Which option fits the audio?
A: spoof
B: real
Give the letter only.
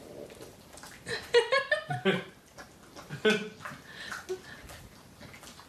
B